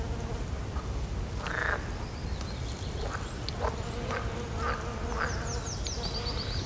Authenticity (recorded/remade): recorded